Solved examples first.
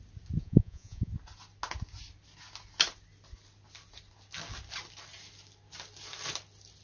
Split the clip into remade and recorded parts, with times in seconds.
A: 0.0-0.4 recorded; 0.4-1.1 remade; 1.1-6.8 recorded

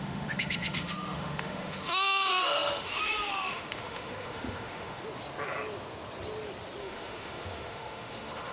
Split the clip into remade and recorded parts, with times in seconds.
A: 0.0-5.0 remade; 5.0-6.8 recorded; 6.8-8.5 remade

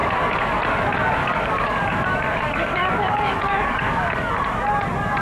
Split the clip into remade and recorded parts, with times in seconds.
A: 0.0-0.6 remade; 0.6-1.2 recorded; 1.2-4.3 remade; 4.3-5.2 recorded

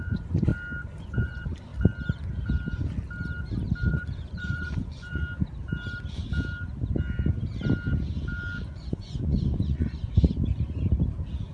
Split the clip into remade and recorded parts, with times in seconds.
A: 0.0-0.5 remade; 0.5-1.0 recorded; 1.0-1.7 remade; 1.7-3.9 recorded; 3.9-5.2 remade; 5.2-8.7 recorded; 8.7-10.1 remade; 10.1-11.5 recorded

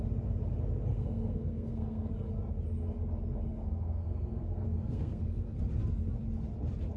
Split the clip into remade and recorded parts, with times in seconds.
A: 0.0-0.9 recorded; 0.9-2.1 remade; 2.1-3.5 recorded; 3.5-5.6 remade; 5.6-7.0 recorded

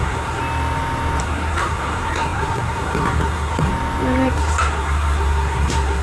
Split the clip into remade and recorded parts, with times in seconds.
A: 0.0-0.4 remade; 0.4-1.2 recorded; 1.2-3.7 remade; 3.7-4.3 recorded; 4.3-6.0 remade

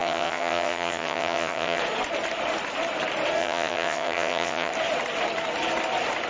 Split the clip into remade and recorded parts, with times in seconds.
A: 0.0-1.8 remade; 1.8-3.4 recorded; 3.4-4.7 remade; 4.7-6.3 recorded

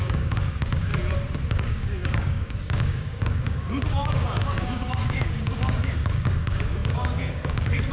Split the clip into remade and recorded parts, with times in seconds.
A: 0.0-0.9 remade; 0.9-1.5 recorded; 1.5-7.9 remade